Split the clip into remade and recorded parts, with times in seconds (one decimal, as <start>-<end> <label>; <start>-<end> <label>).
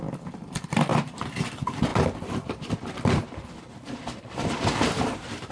0.0-5.5 remade